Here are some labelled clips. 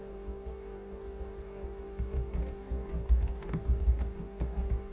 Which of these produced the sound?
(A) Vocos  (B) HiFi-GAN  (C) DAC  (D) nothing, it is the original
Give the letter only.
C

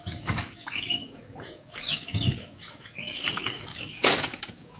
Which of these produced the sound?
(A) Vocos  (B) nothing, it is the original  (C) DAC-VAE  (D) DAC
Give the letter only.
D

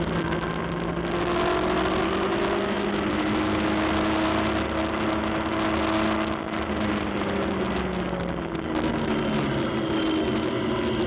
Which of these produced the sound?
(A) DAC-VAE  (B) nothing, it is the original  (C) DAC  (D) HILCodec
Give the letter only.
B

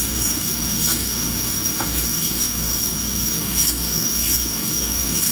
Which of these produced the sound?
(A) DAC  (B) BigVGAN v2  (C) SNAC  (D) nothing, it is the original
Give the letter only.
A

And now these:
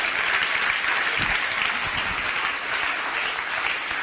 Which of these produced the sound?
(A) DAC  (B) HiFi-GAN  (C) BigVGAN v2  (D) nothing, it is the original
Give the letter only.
D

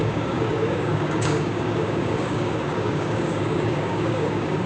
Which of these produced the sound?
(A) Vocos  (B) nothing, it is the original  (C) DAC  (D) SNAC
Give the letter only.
C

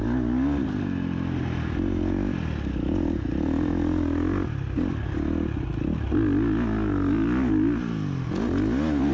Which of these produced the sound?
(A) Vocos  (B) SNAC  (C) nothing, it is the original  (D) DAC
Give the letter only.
C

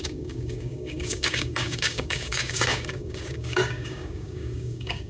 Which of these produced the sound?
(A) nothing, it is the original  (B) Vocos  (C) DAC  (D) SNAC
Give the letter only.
C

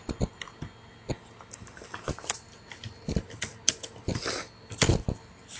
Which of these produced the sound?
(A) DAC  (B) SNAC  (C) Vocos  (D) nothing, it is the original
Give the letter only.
D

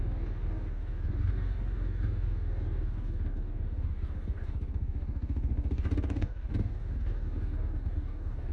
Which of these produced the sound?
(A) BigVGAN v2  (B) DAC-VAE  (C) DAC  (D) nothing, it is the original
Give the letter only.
C